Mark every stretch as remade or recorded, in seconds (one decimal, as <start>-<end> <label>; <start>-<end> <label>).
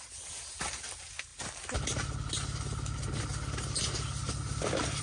0.0-5.0 recorded